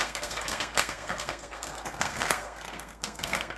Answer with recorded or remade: remade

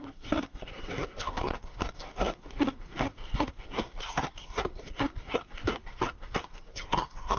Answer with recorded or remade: remade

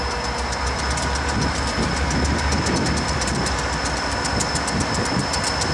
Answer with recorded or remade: recorded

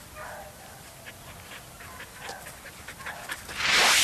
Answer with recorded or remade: recorded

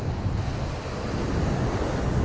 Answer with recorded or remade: recorded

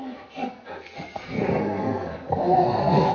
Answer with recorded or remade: remade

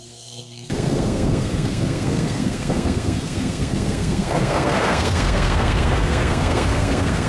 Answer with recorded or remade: remade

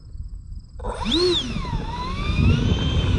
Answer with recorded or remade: recorded